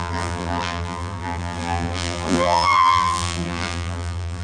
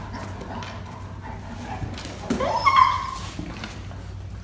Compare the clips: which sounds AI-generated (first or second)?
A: first